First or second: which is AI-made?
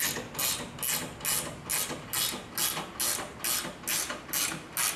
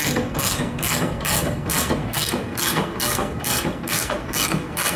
second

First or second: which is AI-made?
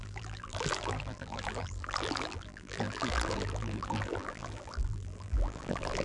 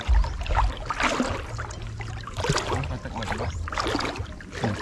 first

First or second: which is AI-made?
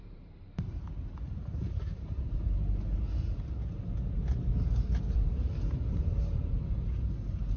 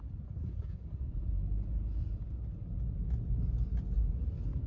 first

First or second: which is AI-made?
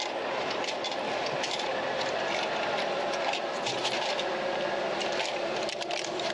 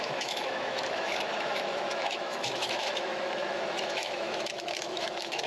second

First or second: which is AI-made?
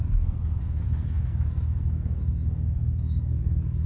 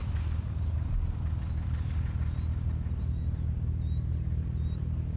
first